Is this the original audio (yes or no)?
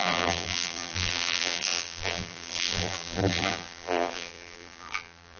no